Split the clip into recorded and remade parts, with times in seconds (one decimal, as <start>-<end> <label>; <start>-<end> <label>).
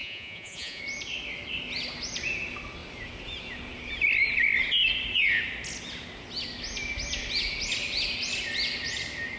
0.0-0.8 remade; 0.8-9.4 recorded